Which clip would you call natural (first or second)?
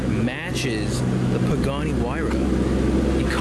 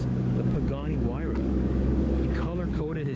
first